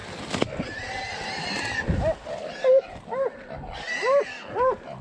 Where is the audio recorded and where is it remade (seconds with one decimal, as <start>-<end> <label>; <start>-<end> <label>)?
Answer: 0.0-5.0 recorded